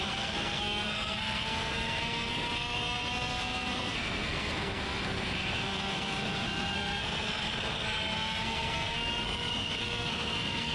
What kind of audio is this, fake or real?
fake